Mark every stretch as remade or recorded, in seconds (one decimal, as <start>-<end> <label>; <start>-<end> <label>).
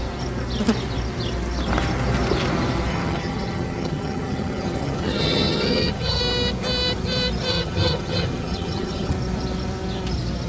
0.0-2.9 recorded; 2.9-6.2 remade; 6.2-7.5 recorded; 7.5-9.1 remade; 9.1-10.5 recorded